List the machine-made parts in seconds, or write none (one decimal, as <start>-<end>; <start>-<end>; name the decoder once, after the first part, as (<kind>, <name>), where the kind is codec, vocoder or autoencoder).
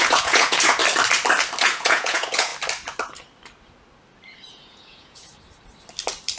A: 0.0-0.8 (vocoder, Vocos); 1.6-2.5; 4.5-5.3